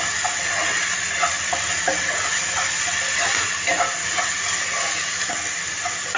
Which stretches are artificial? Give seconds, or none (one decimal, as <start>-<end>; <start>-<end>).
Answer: none